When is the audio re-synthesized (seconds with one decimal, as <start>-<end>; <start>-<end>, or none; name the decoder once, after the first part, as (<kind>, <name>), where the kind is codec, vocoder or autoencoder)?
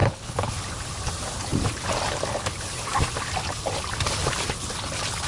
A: 0.0-0.5 (codec, HILCodec)